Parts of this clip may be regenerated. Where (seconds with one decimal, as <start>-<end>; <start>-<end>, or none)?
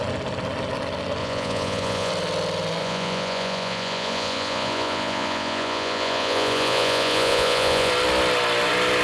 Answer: 1.2-2.1; 2.8-7.9